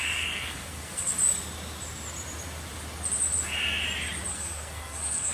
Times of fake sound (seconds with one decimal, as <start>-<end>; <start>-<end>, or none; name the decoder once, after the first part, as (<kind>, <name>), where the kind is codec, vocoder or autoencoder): 0.0-1.1 (codec, SNAC); 4.3-5.3